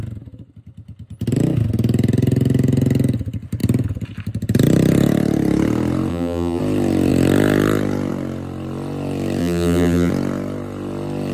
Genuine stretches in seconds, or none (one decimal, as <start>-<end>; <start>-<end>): 0.0-6.1; 6.6-9.4; 10.1-11.3